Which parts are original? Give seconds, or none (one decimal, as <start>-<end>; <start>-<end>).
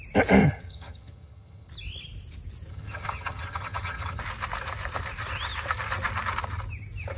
0.0-0.4; 1.7-2.7; 4.2-7.2